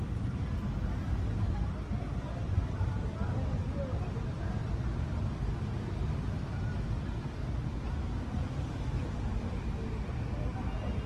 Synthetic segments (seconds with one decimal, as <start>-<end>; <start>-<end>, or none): none